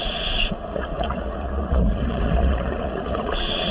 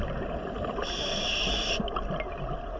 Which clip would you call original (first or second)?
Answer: second